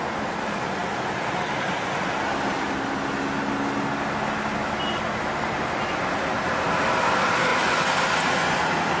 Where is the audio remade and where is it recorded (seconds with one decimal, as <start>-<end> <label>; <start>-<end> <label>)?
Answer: 0.0-7.5 recorded; 7.5-8.6 remade; 8.6-9.0 recorded